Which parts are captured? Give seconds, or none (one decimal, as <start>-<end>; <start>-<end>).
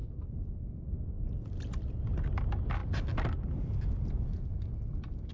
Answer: 0.0-5.3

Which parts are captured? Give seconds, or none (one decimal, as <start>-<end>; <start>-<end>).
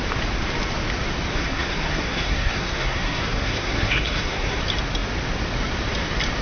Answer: 0.0-1.3; 4.6-6.4